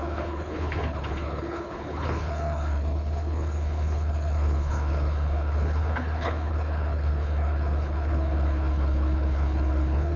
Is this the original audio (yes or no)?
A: no